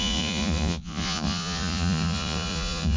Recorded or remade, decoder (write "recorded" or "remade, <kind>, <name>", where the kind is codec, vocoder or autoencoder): remade, vocoder, Vocos